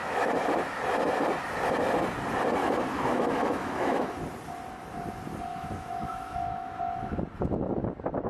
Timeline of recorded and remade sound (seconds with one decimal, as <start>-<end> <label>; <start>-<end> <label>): 0.0-0.8 remade; 0.8-2.6 recorded; 2.6-4.2 remade; 4.2-5.5 recorded; 5.5-6.8 remade; 6.8-8.3 recorded